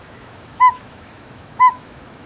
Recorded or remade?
remade